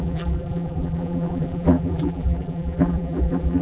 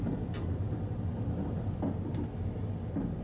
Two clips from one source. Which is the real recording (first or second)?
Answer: second